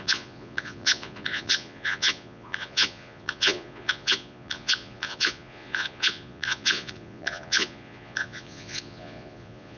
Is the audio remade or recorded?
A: remade